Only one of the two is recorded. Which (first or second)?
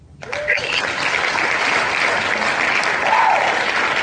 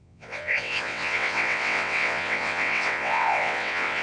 first